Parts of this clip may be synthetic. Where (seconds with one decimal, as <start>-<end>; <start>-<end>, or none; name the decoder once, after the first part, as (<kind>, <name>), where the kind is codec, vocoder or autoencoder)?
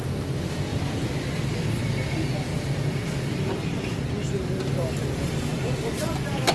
0.7-1.9 (vocoder, BigVGAN v2); 2.5-3.5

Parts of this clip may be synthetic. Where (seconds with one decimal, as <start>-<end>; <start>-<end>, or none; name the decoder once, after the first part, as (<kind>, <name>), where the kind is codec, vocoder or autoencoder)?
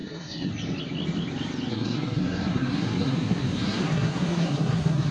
0.0-0.5 (codec, SNAC); 1.7-5.1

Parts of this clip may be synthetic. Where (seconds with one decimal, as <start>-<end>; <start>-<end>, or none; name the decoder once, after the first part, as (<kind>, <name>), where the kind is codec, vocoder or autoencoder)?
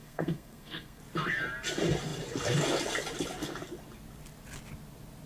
0.0-1.0 (codec, SNAC)